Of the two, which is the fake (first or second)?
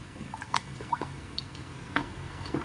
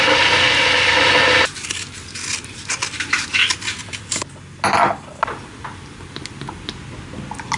first